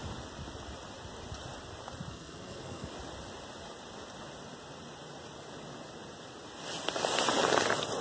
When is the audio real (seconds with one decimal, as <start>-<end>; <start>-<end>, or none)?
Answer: 0.0-2.1; 2.9-8.0